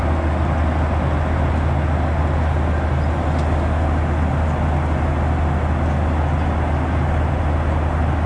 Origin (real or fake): real